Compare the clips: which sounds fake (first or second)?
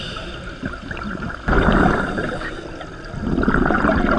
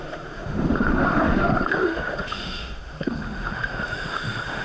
second